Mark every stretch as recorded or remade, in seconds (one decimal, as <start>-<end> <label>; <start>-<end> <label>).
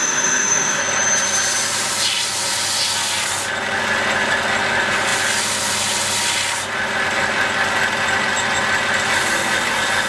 0.0-0.8 remade; 0.8-10.1 recorded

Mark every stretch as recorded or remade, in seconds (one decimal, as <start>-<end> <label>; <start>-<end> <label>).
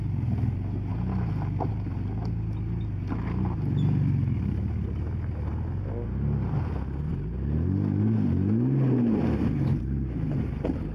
0.0-10.9 recorded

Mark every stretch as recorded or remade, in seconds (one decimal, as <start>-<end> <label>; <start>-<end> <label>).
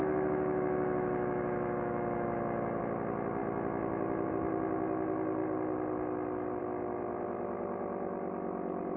0.0-2.8 remade; 2.8-9.0 recorded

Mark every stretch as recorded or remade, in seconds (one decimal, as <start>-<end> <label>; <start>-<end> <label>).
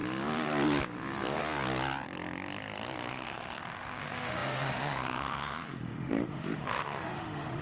0.0-3.1 recorded; 3.1-7.6 remade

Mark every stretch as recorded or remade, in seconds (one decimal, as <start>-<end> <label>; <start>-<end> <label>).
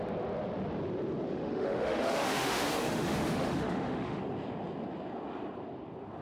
0.0-1.3 recorded; 1.3-4.2 remade; 4.2-6.2 recorded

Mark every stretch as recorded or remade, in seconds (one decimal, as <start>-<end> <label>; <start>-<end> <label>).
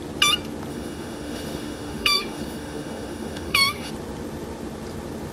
0.0-0.7 recorded; 0.7-3.9 remade; 3.9-5.3 recorded